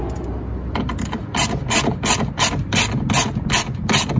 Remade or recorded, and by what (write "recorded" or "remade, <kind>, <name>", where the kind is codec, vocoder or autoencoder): recorded